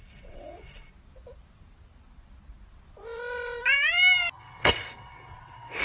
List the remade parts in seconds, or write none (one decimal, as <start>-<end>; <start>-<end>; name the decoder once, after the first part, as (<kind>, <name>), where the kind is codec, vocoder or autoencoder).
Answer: 0.0-0.9 (vocoder, WaveNeXt); 4.4-5.8